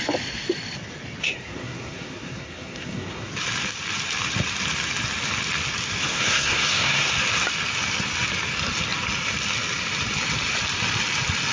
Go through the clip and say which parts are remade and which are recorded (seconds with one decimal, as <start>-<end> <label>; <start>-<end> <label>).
0.0-1.2 recorded; 1.2-3.3 remade; 3.3-6.0 recorded; 6.0-7.1 remade; 7.1-11.5 recorded